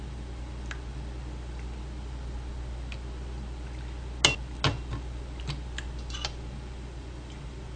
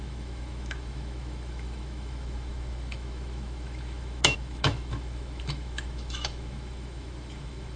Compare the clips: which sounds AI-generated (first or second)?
second